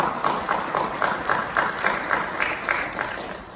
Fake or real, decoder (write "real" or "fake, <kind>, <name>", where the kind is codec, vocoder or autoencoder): real